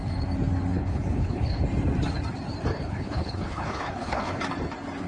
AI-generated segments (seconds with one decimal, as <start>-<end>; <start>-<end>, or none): 0.7-1.6; 2.7-4.4